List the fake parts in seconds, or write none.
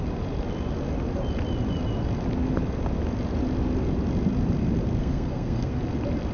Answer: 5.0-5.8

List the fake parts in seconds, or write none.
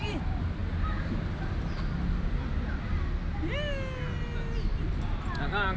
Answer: none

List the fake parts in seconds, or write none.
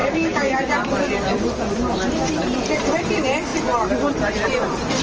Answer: none